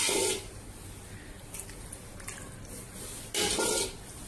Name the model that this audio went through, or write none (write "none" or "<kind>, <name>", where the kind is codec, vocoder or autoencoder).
none